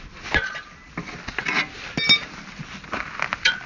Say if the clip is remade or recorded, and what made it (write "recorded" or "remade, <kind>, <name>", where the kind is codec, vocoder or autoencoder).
recorded